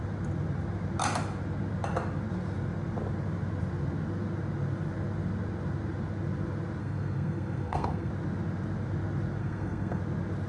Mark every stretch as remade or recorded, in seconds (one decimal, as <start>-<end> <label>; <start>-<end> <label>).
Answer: 0.0-6.8 recorded; 6.8-8.1 remade; 8.1-9.4 recorded; 9.4-10.0 remade; 10.0-10.5 recorded